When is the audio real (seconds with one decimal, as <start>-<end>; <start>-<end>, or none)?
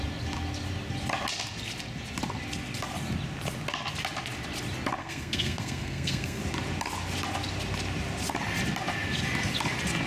0.0-5.0; 6.4-10.1